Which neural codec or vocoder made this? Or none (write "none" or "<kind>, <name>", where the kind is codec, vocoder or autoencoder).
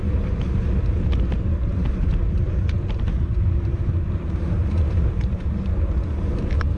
vocoder, BigVGAN v2